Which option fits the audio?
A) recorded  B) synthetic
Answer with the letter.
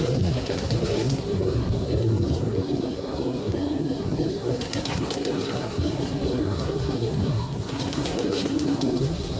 B